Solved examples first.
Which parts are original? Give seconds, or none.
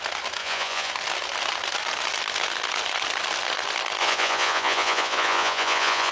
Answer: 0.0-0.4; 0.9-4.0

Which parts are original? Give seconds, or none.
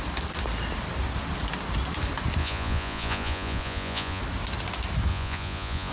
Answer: 0.0-2.4; 4.2-5.1